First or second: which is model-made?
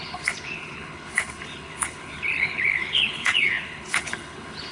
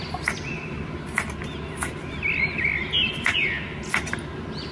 first